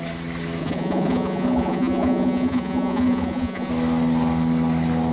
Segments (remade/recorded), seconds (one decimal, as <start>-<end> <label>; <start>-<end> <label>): 0.0-0.6 recorded; 0.6-3.7 remade; 3.7-5.1 recorded